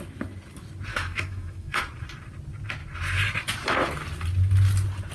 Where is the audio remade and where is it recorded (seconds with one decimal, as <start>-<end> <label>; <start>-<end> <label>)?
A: 0.0-0.9 recorded; 0.9-1.8 remade; 1.8-5.1 recorded